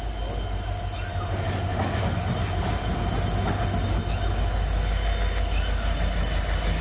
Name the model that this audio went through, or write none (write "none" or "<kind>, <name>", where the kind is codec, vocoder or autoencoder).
none